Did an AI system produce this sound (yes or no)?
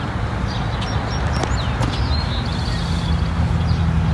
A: no